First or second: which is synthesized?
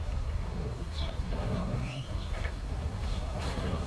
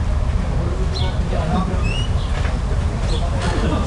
first